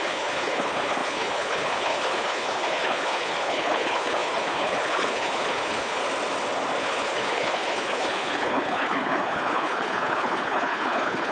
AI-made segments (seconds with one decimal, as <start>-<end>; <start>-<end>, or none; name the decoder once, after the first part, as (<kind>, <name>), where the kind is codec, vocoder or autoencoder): 0.0-6.0 (codec, HILCodec); 6.8-11.3